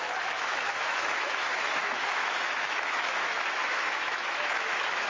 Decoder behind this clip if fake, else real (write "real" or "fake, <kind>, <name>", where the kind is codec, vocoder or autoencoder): fake, autoencoder, DAC-VAE